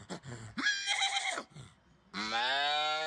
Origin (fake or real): real